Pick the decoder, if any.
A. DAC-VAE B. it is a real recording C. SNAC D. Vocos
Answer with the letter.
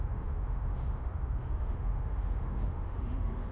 A